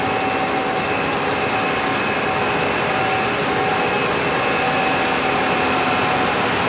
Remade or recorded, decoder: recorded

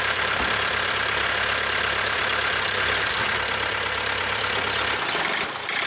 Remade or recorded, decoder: remade, vocoder, BigVGAN v2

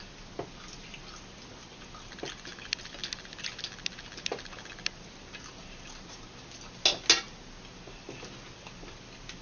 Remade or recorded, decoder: recorded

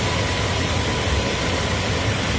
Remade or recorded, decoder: recorded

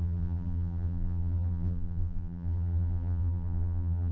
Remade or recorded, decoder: remade, vocoder, BigVGAN v2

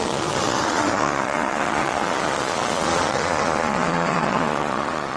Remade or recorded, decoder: remade, vocoder, Vocos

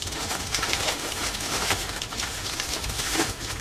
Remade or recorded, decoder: remade, autoencoder, DAC-VAE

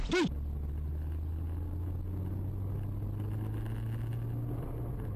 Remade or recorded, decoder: recorded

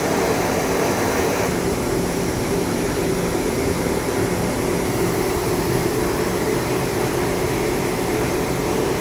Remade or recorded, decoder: remade, vocoder, BigVGAN v2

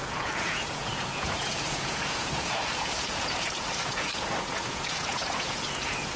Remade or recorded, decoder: remade, vocoder, Vocos